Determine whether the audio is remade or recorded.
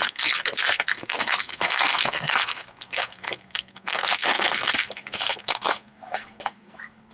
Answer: remade